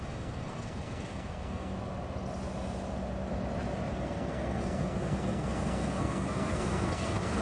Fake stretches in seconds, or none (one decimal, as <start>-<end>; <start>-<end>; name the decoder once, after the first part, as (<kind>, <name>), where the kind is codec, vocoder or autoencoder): 0.0-1.7 (codec, SNAC); 3.9-7.4